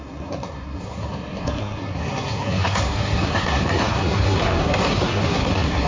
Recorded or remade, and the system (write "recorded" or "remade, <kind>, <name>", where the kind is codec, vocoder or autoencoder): remade, codec, SNAC